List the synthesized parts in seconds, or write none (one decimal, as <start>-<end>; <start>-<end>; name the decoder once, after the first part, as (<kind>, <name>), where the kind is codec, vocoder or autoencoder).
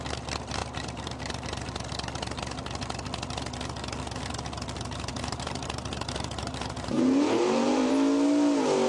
0.6-2.4 (vocoder, BigVGAN v2); 5.1-7.9